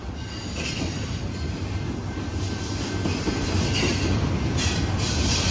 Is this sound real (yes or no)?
yes